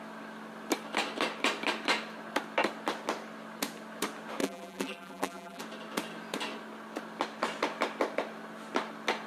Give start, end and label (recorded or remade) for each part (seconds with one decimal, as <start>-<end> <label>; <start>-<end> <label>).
0.0-4.4 recorded; 4.4-5.6 remade; 5.6-9.3 recorded